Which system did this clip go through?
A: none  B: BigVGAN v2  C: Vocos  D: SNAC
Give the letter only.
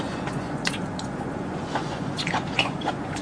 C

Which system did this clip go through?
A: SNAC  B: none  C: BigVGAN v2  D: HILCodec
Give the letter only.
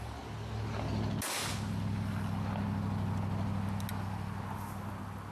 B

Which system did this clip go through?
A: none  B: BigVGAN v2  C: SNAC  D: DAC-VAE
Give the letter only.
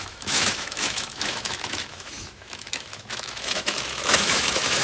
D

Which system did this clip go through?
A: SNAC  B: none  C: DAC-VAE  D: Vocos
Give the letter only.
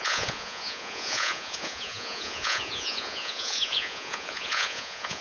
D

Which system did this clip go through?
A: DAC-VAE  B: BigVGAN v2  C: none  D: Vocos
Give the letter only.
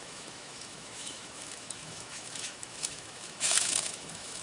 A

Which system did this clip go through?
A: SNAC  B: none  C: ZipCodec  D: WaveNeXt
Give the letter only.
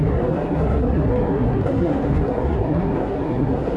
A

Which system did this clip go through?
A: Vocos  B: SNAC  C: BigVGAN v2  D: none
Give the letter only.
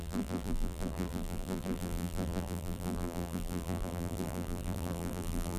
C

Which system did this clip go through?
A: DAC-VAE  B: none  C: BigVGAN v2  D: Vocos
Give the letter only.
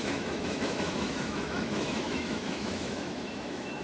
A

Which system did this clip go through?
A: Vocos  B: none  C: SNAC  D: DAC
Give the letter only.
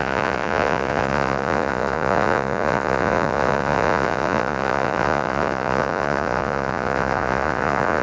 A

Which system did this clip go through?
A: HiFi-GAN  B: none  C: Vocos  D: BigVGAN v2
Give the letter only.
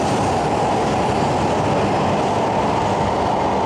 B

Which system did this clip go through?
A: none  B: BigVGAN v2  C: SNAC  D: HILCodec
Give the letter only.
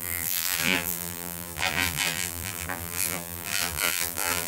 B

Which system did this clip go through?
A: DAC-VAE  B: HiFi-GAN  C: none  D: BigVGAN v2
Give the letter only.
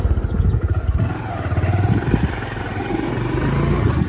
C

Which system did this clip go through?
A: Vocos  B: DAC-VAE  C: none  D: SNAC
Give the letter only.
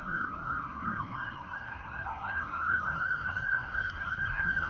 D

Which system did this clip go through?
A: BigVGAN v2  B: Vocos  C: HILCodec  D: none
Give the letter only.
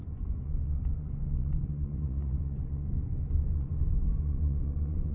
B